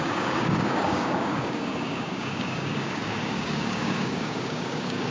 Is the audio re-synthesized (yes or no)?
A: yes